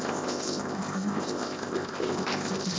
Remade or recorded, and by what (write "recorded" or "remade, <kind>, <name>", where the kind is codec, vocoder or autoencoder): remade, codec, ZipCodec